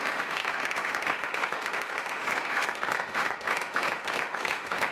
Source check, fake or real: fake